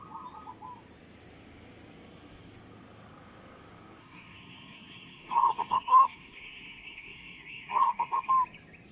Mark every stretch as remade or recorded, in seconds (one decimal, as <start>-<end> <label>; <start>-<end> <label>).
0.0-4.0 recorded; 4.0-8.3 remade; 8.3-8.9 recorded